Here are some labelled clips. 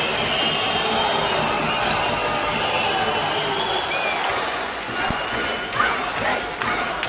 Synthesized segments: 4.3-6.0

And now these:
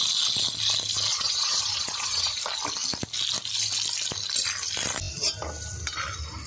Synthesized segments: 1.1-2.4

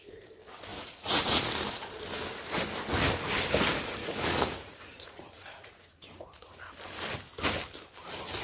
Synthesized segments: 0.7-1.4; 4.0-6.6

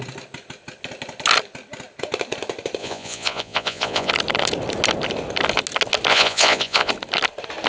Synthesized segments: 2.8-4.1; 6.1-6.9

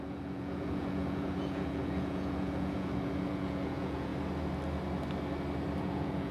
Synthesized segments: 0.0-4.1; 5.8-6.3